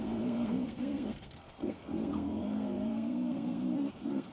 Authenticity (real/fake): fake